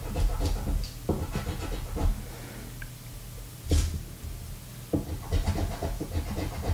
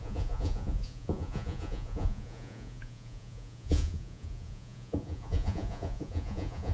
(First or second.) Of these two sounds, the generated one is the second